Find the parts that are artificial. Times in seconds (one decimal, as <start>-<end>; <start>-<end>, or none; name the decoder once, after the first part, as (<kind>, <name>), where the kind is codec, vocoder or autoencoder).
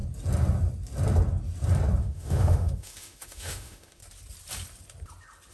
2.0-4.0 (autoencoder, DAC-VAE)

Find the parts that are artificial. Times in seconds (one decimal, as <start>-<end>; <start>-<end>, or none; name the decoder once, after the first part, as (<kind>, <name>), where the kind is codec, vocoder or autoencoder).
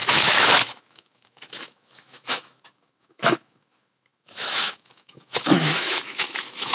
0.0-6.7 (autoencoder, DAC-VAE)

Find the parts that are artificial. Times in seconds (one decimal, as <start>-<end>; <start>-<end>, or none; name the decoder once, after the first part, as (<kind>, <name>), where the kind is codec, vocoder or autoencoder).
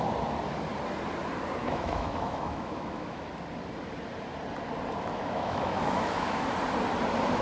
1.6-3.3 (autoencoder, DAC-VAE); 5.1-6.4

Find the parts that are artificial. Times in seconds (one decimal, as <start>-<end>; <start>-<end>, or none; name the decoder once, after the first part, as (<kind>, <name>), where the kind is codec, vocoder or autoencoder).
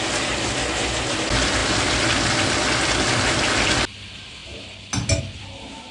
none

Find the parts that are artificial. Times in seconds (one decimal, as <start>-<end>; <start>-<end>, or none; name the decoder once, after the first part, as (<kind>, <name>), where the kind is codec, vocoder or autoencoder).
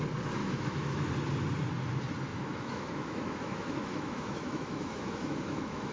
0.4-1.1 (autoencoder, DAC-VAE); 2.3-5.9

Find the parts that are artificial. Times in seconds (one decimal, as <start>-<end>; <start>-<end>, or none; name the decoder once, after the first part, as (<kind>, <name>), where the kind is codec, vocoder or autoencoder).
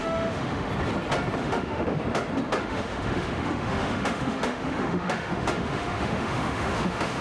0.0-0.7 (autoencoder, DAC-VAE); 1.4-2.0; 2.6-7.2